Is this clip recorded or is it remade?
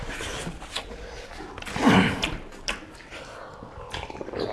recorded